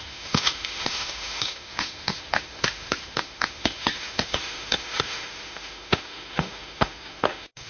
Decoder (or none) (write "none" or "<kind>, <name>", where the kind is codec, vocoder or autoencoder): autoencoder, DAC-VAE